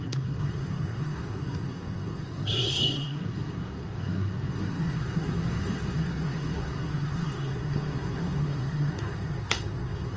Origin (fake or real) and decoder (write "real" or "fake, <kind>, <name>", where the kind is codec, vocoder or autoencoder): fake, codec, SNAC